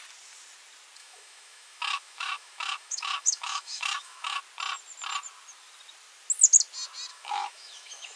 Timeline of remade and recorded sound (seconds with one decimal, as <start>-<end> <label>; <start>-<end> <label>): 0.0-1.0 recorded; 1.0-4.4 remade; 4.4-7.1 recorded; 7.1-8.2 remade